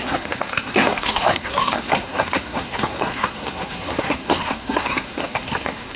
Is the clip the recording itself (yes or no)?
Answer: no